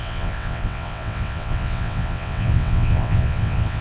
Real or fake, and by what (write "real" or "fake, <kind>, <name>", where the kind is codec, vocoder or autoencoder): fake, vocoder, WaveNeXt